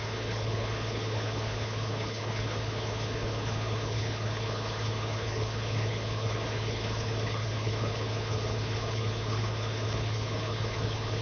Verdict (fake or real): fake